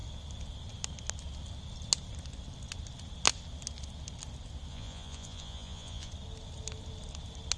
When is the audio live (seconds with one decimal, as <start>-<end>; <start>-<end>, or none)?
0.0-4.7; 6.1-7.6